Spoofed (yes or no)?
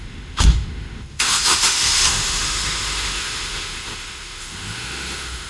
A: yes